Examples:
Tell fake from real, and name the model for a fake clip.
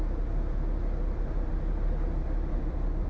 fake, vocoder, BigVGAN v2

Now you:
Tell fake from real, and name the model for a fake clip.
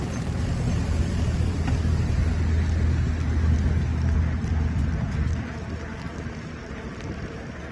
real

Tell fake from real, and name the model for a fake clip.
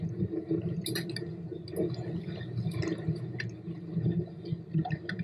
real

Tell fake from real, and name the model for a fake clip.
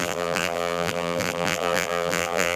fake, vocoder, BigVGAN v2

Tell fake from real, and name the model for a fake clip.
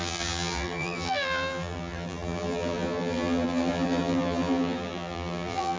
fake, vocoder, BigVGAN v2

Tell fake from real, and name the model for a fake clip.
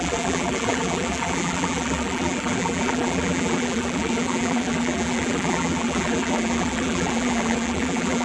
fake, vocoder, BigVGAN v2